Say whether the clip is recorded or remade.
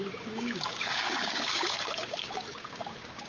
remade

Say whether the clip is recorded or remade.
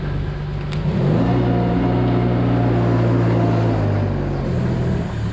recorded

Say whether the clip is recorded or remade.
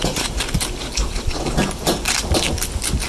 recorded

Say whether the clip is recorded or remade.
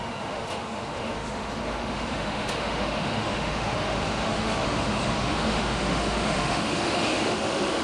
remade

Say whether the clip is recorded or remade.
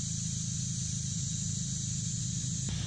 recorded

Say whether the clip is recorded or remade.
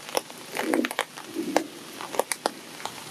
recorded